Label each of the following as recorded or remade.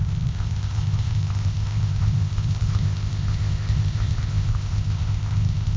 remade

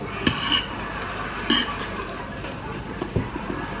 recorded